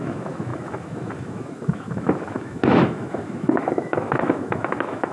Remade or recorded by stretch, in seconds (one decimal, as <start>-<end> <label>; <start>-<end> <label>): 0.0-5.1 remade